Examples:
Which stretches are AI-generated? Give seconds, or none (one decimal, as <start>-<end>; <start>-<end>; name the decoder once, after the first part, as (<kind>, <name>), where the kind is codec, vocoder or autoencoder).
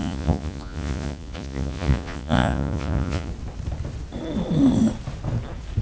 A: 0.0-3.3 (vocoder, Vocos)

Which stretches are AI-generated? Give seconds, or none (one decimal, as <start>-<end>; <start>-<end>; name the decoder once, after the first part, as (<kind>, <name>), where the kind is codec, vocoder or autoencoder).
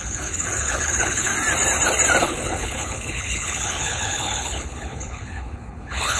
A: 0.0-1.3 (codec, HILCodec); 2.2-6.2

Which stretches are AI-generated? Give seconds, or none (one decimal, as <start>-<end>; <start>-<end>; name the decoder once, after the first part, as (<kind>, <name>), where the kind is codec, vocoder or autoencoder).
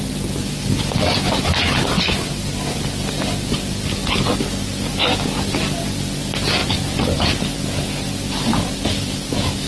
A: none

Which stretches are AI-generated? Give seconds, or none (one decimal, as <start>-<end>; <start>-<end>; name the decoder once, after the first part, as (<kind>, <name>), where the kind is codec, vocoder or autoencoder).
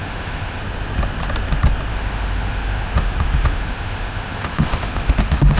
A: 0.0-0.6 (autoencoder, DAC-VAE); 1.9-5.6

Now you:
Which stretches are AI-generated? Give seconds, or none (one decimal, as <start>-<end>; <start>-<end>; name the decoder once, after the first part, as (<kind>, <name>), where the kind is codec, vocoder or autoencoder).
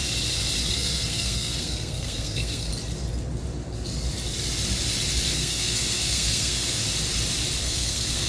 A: 0.7-2.7 (codec, SNAC); 5.3-6.8; 7.6-8.3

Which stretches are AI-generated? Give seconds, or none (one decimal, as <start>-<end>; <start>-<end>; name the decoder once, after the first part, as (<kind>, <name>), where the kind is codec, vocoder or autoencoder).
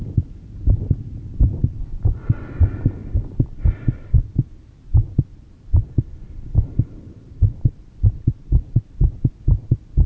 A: 0.0-2.0 (vocoder, BigVGAN v2); 4.9-9.3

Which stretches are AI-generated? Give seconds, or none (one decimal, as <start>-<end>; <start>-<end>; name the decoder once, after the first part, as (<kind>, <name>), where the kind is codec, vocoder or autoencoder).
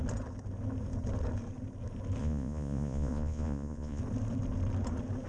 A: 2.2-4.0 (vocoder, Vocos)